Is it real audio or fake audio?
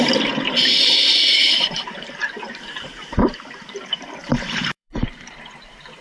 fake